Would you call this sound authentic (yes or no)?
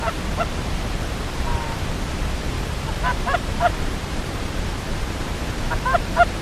no